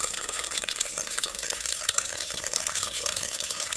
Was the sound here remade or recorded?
remade